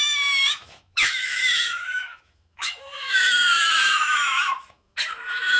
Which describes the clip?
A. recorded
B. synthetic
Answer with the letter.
B